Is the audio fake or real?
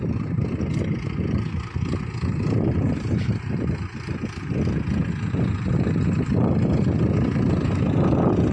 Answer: real